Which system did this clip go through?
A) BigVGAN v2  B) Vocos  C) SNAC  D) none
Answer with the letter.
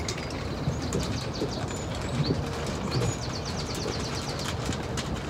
D